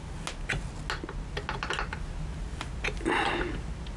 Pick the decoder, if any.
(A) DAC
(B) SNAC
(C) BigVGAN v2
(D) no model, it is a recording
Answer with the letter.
D